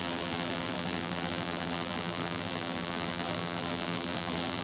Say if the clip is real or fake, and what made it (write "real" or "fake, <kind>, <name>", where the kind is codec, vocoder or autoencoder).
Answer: fake, vocoder, BigVGAN v2